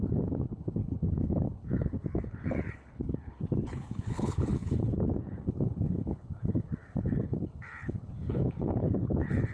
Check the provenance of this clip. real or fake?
fake